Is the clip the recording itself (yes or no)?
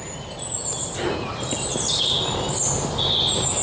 yes